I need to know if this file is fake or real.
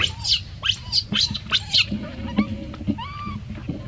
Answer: real